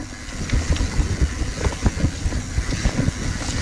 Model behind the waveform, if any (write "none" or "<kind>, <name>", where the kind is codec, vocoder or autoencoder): none